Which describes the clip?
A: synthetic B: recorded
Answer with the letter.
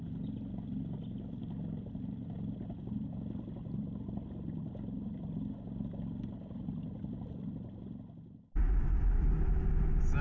B